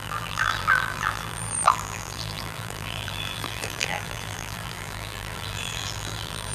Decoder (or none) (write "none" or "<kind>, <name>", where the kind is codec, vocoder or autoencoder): vocoder, BigVGAN v2